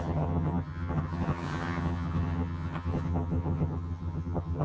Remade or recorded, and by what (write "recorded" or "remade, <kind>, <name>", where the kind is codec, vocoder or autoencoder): remade, vocoder, HiFi-GAN